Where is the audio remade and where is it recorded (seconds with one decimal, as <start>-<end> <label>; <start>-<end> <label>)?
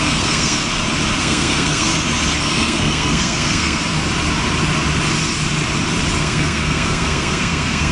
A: 0.0-0.6 remade; 0.6-1.2 recorded; 1.2-1.9 remade; 1.9-2.4 recorded; 2.4-3.8 remade; 3.8-6.2 recorded; 6.2-7.9 remade